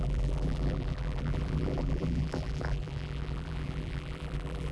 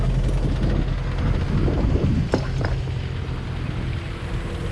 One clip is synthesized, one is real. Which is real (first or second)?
second